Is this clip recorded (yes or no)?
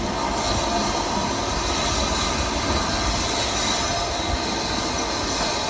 yes